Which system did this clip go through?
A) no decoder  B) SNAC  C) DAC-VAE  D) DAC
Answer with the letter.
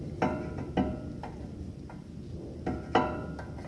A